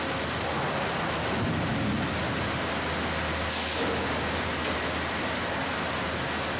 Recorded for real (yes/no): yes